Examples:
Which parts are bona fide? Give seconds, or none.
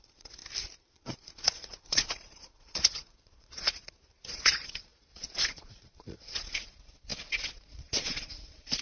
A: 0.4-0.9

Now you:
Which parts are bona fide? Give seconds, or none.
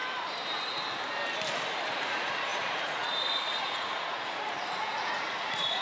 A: 0.0-2.0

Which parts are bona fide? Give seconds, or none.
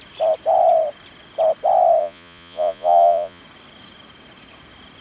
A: 0.0-2.0; 3.4-5.0